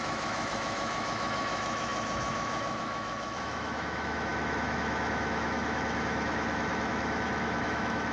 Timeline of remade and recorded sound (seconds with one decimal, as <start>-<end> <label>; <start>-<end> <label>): 0.0-8.1 remade